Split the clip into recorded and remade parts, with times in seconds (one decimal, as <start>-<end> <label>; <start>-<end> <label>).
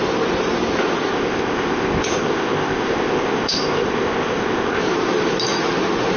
0.0-1.1 recorded; 1.1-4.8 remade; 4.8-6.2 recorded